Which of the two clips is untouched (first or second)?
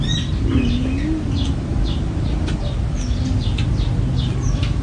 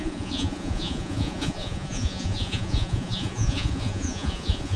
first